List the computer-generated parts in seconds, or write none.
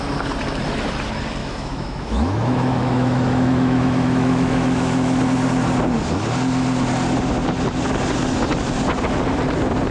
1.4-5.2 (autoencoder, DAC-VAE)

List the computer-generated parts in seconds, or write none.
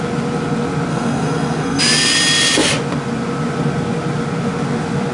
0.9-1.8 (codec, SNAC)